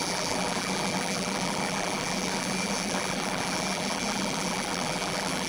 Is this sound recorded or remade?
remade